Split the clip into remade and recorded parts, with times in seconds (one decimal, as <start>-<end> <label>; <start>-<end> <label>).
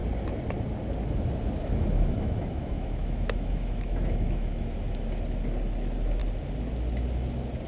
0.0-1.6 recorded; 1.6-4.8 remade; 4.8-7.7 recorded